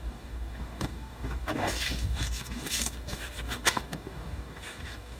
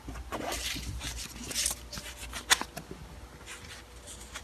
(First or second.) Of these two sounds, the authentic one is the second